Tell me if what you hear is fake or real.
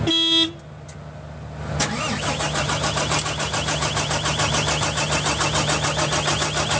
real